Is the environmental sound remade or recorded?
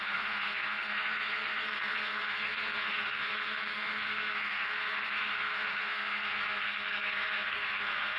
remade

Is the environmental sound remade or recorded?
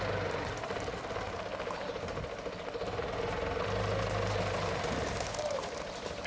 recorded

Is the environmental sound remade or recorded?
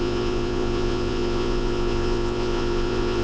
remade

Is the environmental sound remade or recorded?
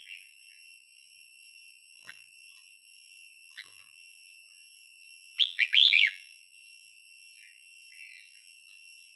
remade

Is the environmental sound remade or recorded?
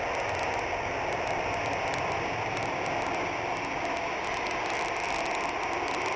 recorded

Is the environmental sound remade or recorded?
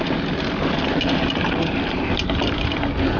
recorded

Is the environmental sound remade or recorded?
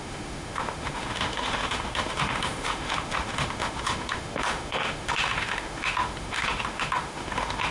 remade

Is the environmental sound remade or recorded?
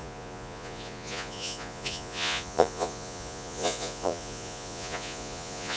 remade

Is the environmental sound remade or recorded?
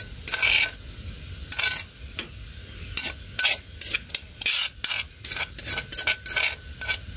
recorded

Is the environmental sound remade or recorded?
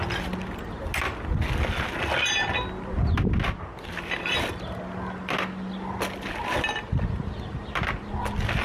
recorded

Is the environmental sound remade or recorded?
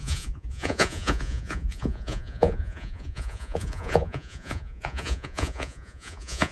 remade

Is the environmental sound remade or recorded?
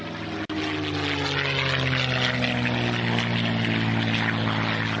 recorded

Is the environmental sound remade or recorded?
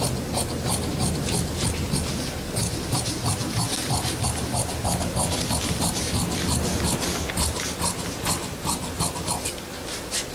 recorded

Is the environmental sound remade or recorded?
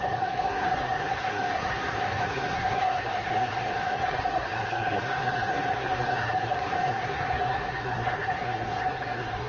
remade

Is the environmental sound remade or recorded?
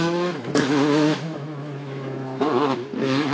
remade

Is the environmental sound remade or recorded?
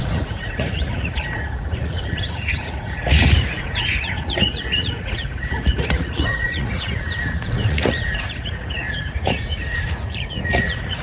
remade